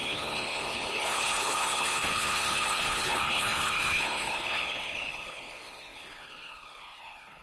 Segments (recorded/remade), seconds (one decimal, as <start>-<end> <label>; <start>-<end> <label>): 0.0-7.4 remade